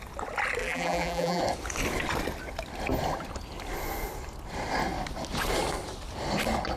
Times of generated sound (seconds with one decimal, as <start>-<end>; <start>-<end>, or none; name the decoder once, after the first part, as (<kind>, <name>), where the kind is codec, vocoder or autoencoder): 0.6-1.4 (vocoder, BigVGAN v2)